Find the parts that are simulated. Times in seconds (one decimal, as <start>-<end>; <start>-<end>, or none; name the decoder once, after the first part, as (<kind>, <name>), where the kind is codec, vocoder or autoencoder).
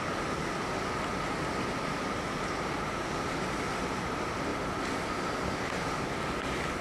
none